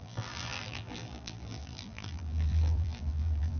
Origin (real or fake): fake